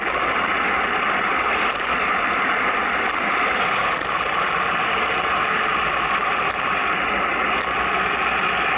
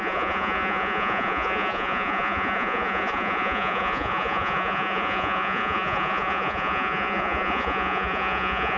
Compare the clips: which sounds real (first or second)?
first